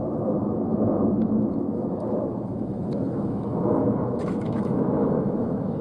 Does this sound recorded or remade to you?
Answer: remade